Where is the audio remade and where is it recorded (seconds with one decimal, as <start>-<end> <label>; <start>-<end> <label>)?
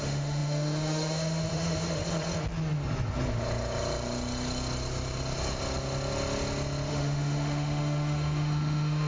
0.0-2.0 remade; 2.0-6.9 recorded; 6.9-9.1 remade